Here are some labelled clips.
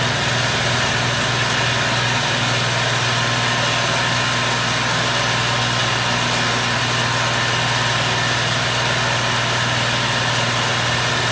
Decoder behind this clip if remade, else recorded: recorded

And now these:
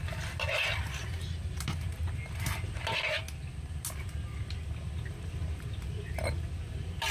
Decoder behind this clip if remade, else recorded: recorded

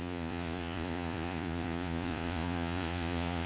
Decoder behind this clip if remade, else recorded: remade, vocoder, Vocos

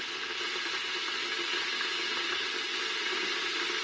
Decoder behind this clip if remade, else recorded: recorded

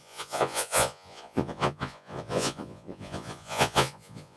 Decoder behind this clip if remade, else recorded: remade, vocoder, Vocos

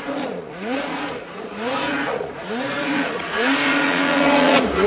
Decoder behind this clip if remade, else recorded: remade, vocoder, Vocos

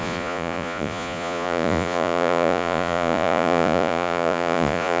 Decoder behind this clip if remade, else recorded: remade, vocoder, Vocos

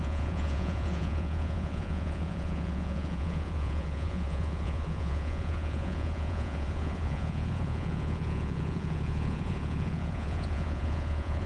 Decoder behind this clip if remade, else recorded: remade, vocoder, Vocos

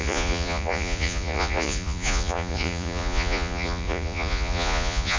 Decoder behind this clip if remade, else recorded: remade, vocoder, Vocos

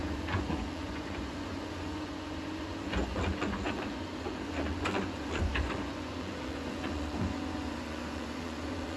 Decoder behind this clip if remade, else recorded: remade, vocoder, Vocos